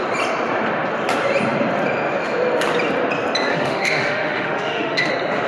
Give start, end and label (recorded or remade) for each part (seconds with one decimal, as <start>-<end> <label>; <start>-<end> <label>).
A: 0.0-3.5 recorded; 3.5-5.1 remade; 5.1-5.5 recorded